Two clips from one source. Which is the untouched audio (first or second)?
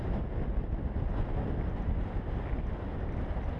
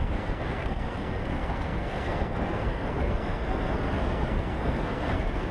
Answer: first